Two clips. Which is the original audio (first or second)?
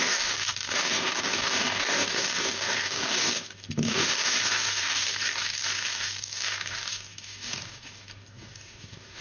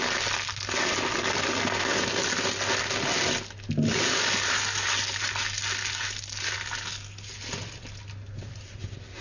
second